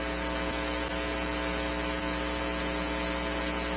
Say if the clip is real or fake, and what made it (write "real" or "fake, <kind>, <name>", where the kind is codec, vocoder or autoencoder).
real